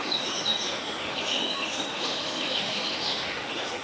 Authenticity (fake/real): fake